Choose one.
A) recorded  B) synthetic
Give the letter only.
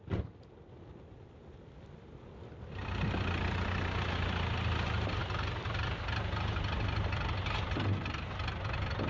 A